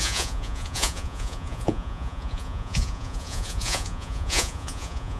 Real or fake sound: fake